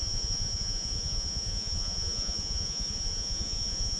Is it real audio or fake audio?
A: fake